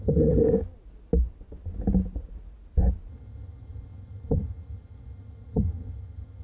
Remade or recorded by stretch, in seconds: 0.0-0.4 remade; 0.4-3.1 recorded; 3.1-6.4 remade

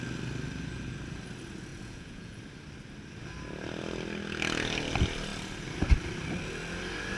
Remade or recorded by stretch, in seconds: 0.0-1.7 recorded; 1.7-2.4 remade; 2.4-7.2 recorded

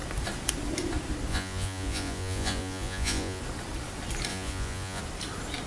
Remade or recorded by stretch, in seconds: 0.0-1.3 recorded; 1.3-3.4 remade; 3.4-4.3 recorded; 4.3-5.0 remade; 5.0-5.7 recorded

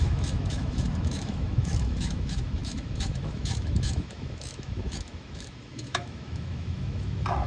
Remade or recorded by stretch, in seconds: 0.0-7.5 remade